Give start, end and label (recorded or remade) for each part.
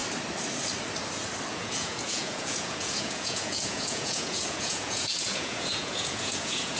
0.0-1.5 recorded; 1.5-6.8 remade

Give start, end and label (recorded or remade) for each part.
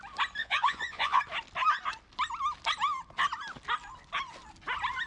0.0-0.4 recorded; 0.4-1.2 remade; 1.2-5.1 recorded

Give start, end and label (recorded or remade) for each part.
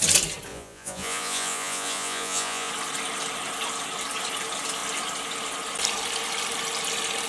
0.0-0.5 recorded; 0.5-2.7 remade; 2.7-7.3 recorded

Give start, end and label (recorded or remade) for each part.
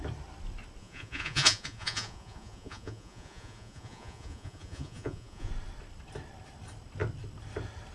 0.0-0.8 recorded; 0.8-5.5 remade; 5.5-7.9 recorded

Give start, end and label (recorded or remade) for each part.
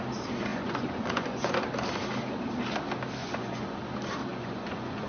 0.0-0.5 recorded; 0.5-1.5 remade; 1.5-3.2 recorded; 3.2-3.8 remade; 3.8-4.3 recorded; 4.3-5.1 remade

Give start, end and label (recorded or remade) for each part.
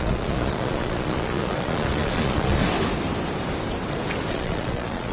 0.0-2.6 remade; 2.6-4.3 recorded; 4.3-5.1 remade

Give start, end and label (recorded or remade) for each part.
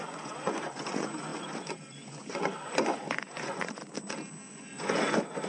0.0-3.8 remade; 3.8-4.5 recorded; 4.5-5.5 remade